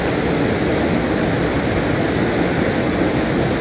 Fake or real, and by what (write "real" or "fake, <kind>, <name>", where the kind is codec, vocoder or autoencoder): real